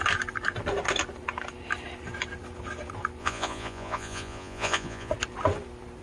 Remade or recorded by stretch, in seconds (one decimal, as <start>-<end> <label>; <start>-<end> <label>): 0.0-3.2 recorded; 3.2-5.1 remade; 5.1-6.0 recorded